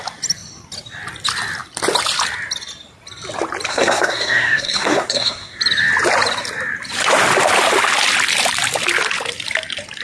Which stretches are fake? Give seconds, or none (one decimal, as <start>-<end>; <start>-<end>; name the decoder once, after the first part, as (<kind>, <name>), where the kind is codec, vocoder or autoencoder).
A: 3.7-5.6 (codec, SNAC)